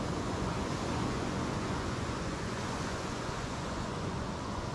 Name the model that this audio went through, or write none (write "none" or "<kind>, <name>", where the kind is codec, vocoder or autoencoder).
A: vocoder, Vocos